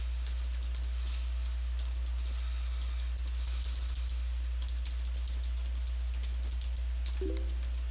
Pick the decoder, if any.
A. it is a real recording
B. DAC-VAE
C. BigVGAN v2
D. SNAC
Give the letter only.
A